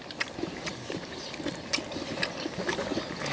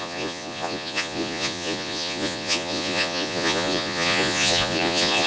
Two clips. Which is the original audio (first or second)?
first